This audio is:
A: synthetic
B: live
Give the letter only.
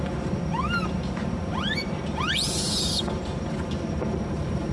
B